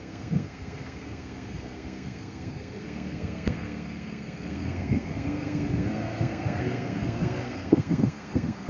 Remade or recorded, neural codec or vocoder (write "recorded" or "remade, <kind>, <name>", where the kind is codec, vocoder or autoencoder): remade, codec, SNAC